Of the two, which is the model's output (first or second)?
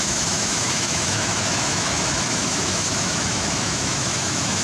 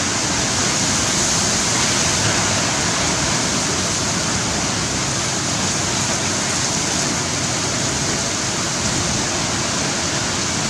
first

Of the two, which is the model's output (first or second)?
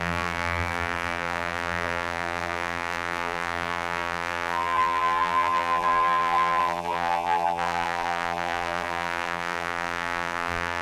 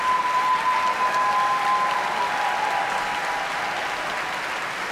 first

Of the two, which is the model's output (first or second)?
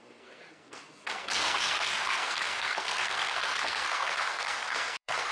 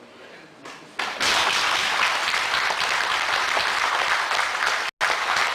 first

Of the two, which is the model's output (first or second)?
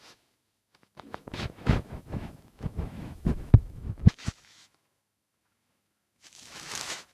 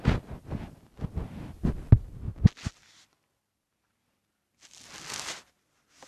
first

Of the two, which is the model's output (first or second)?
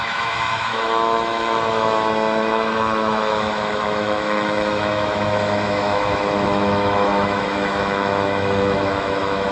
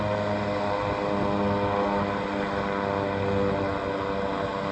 first